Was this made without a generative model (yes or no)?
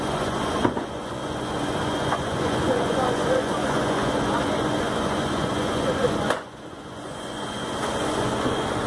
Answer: no